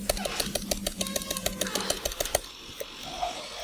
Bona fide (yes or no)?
yes